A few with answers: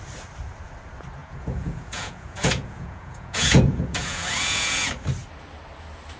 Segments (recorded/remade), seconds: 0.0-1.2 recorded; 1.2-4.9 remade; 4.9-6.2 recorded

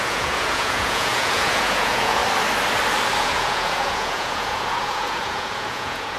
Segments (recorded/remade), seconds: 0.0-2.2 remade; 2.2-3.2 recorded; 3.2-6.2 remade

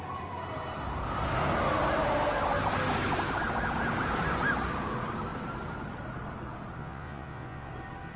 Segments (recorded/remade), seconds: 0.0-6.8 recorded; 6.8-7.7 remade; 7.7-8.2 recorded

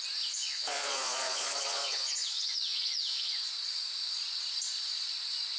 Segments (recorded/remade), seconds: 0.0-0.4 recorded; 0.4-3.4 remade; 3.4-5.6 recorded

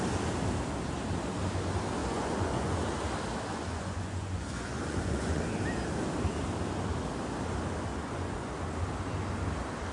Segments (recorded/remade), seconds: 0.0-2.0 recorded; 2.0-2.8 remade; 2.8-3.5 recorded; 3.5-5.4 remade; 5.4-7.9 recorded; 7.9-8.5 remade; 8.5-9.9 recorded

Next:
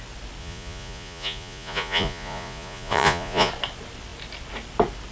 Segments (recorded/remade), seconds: 0.0-0.4 recorded; 0.4-3.5 remade; 3.5-5.1 recorded